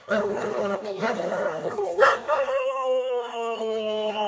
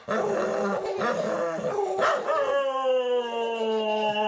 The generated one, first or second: first